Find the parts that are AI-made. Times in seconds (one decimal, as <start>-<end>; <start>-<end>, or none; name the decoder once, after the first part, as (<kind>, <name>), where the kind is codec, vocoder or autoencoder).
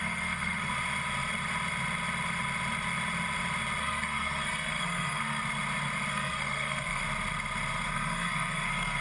0.0-0.7 (codec, SNAC); 3.8-5.4; 6.1-7.0; 7.9-9.0